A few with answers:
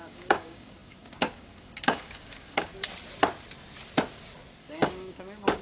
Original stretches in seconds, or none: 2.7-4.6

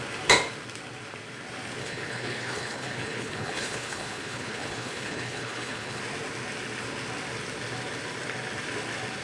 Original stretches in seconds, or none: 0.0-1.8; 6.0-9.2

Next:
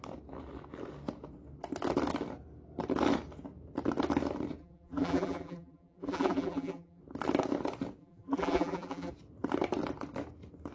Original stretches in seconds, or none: 0.0-4.6; 7.0-8.0; 9.1-10.7

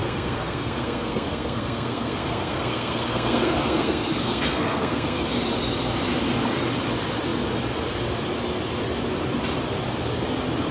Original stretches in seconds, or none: 5.2-10.7